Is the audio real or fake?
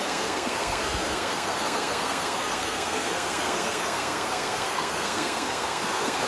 fake